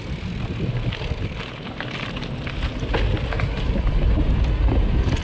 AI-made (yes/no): no